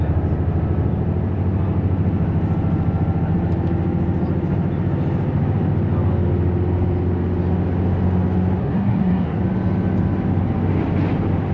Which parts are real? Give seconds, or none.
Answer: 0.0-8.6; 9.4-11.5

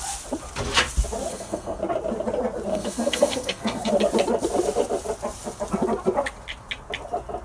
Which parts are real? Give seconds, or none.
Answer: 0.0-1.3; 1.8-2.7; 3.9-7.4

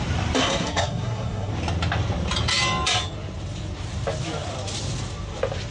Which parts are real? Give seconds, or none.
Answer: 0.0-0.4; 1.5-5.7

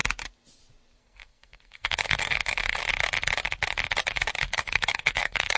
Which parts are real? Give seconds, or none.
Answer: 0.0-1.0; 2.8-4.4